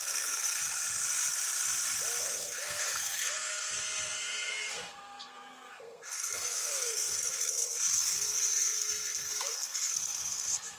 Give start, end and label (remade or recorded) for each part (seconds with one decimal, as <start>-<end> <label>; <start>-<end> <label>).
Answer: 0.0-0.6 remade; 0.6-2.2 recorded; 2.2-10.8 remade